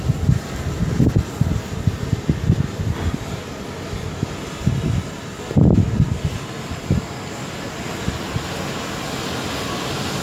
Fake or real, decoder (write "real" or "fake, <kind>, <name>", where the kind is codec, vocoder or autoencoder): real